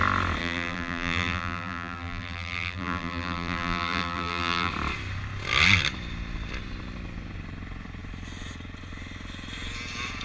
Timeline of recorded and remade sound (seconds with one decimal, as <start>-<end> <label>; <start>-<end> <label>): 0.0-0.4 recorded; 0.4-4.7 remade; 4.7-10.2 recorded